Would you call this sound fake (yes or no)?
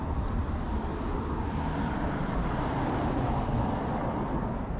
yes